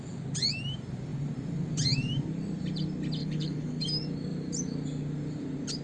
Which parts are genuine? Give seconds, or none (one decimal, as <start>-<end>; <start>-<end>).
0.0-3.2; 3.8-5.8